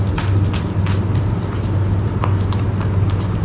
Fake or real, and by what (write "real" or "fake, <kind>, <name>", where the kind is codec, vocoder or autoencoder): real